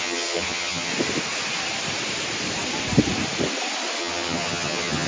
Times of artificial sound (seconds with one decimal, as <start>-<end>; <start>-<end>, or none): 0.0-0.9; 4.0-5.1